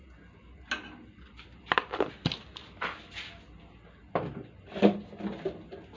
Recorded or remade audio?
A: recorded